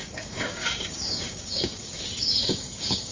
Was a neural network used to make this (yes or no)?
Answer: yes